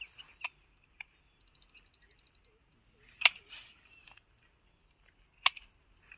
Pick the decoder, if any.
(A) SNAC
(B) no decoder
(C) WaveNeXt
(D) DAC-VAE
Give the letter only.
B